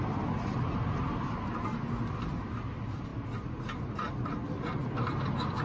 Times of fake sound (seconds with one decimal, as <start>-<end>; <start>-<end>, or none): none